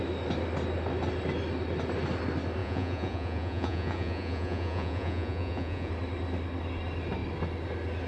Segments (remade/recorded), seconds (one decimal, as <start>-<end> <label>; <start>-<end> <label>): 0.0-2.6 recorded; 2.6-5.9 remade; 5.9-8.1 recorded